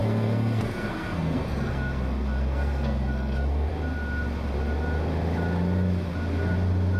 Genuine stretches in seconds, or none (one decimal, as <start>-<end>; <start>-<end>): 3.7-7.0